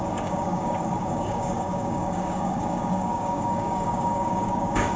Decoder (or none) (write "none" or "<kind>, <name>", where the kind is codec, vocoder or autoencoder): codec, DAC